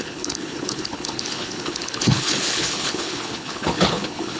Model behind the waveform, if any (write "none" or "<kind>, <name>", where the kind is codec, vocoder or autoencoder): codec, HILCodec